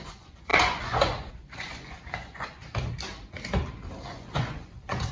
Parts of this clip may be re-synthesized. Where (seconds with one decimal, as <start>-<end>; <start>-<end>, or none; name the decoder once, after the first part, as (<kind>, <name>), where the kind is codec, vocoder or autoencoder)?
0.0-2.6 (vocoder, Vocos); 4.1-5.1